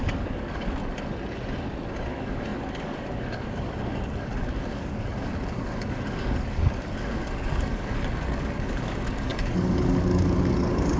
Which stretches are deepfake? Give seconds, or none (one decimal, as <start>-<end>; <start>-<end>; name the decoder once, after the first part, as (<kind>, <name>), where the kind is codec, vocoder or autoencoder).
0.0-0.8 (codec, DAC); 2.1-11.0